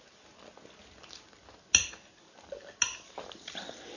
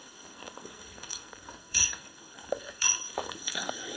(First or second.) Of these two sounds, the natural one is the first